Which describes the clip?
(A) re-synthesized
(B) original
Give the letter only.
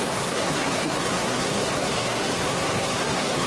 A